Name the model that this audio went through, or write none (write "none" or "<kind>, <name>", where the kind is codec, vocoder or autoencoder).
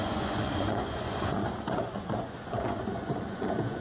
vocoder, Vocos